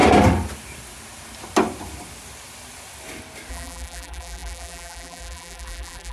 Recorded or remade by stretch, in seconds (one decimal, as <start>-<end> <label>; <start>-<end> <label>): 0.0-3.5 recorded; 3.5-6.1 remade

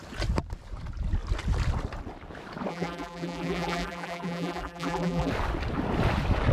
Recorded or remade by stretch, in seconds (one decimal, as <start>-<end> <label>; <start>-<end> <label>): 0.0-2.7 recorded; 2.7-5.3 remade; 5.3-6.5 recorded

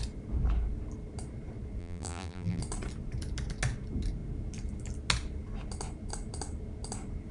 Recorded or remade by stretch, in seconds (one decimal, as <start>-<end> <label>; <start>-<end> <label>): 0.0-1.8 recorded; 1.8-2.6 remade; 2.6-7.3 recorded

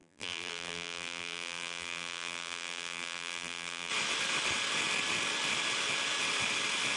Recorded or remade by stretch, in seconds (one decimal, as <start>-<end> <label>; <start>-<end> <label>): 0.0-3.9 remade; 3.9-7.0 recorded